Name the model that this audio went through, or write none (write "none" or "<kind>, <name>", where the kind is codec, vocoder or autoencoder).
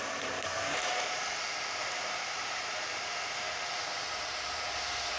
vocoder, BigVGAN v2